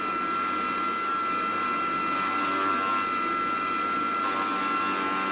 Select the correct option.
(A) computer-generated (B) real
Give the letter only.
B